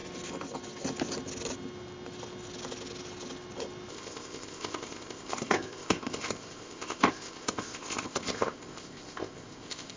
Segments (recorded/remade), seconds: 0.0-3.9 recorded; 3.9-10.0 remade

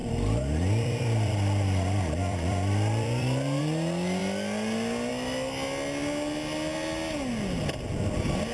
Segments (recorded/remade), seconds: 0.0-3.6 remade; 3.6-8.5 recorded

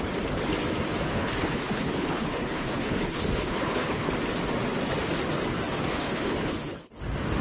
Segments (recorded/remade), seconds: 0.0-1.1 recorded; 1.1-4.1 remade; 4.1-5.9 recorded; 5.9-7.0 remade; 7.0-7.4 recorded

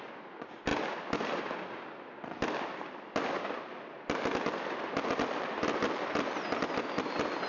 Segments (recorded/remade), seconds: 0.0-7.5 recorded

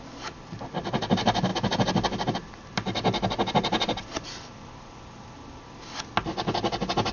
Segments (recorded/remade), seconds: 0.0-7.1 recorded

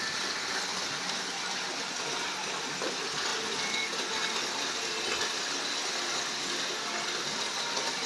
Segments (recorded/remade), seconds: 0.0-8.1 recorded

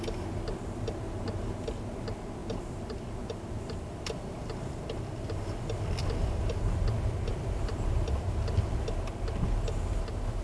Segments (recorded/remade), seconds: 0.0-2.4 recorded; 2.4-6.7 remade; 6.7-7.3 recorded; 7.3-7.9 remade; 7.9-10.4 recorded